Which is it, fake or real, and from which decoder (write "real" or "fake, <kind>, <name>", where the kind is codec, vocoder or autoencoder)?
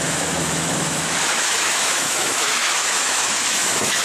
fake, autoencoder, DAC-VAE